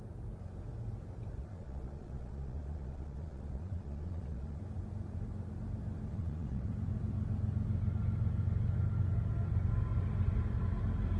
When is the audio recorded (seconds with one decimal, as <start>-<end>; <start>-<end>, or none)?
0.0-1.4; 4.6-6.1; 6.7-11.2

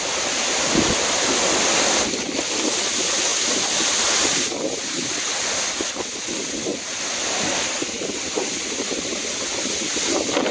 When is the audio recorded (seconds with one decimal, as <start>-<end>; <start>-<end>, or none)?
0.0-10.5

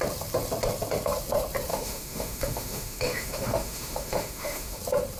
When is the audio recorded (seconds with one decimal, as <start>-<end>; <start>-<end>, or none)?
0.0-1.7; 4.8-5.2